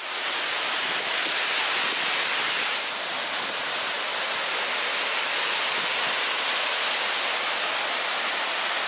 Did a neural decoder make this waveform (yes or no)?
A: no